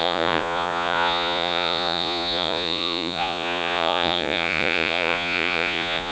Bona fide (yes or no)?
no